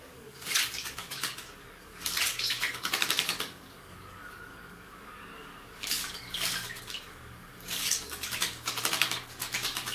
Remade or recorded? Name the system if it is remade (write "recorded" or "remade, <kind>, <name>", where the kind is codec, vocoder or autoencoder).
remade, codec, DAC